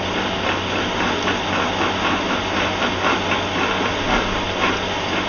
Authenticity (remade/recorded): recorded